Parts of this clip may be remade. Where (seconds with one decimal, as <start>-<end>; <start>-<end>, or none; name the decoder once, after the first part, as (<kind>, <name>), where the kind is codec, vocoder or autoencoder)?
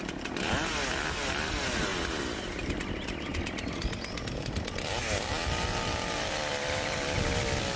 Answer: none